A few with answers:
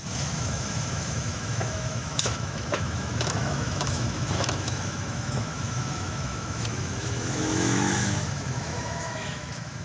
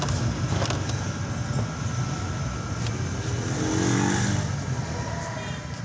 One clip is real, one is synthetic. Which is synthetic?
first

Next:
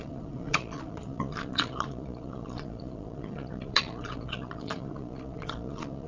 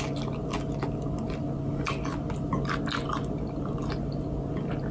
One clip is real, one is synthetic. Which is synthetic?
first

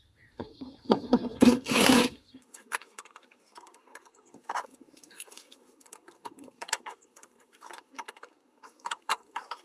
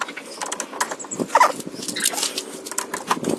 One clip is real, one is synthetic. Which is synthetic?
first